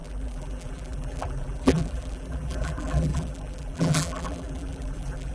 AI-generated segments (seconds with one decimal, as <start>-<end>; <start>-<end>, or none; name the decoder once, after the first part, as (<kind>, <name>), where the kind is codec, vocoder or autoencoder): 0.0-5.3 (vocoder, BigVGAN v2)